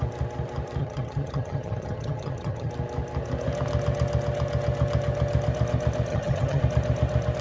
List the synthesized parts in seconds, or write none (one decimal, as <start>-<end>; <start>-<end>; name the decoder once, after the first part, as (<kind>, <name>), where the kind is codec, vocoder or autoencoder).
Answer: 0.8-2.7 (vocoder, HiFi-GAN); 6.1-6.6